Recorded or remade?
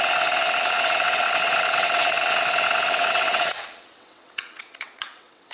remade